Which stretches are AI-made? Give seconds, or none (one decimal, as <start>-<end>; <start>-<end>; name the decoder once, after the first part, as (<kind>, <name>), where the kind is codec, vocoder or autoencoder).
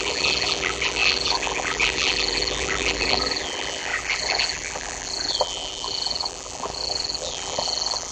0.0-8.1 (vocoder, BigVGAN v2)